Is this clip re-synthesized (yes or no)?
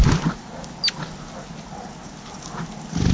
no